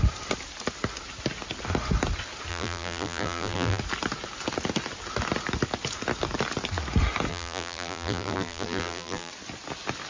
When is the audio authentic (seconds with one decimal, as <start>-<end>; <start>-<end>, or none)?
0.0-2.5; 3.8-7.3; 9.3-10.1